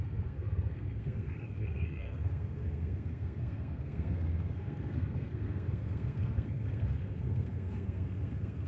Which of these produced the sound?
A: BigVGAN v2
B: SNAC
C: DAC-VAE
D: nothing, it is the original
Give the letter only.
B